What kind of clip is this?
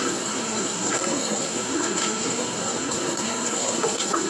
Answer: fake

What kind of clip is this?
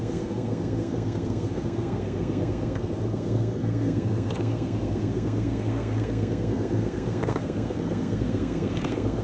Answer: fake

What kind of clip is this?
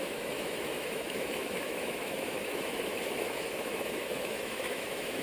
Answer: fake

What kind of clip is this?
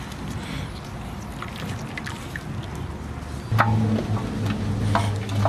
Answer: real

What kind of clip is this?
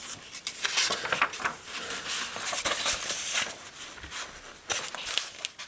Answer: real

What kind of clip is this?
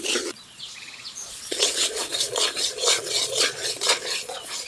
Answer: fake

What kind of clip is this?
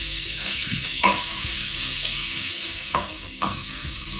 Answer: fake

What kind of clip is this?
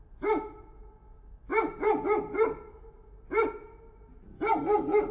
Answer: real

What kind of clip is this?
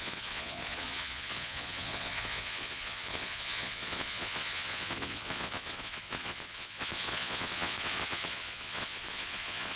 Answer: fake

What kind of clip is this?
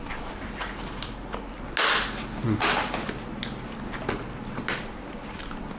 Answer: real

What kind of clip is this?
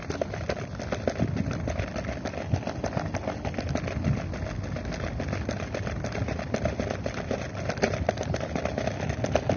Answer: real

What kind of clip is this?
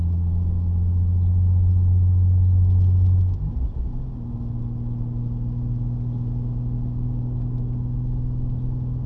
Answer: real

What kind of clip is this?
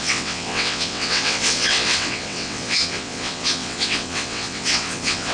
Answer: fake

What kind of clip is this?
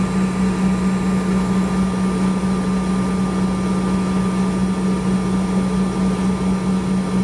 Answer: real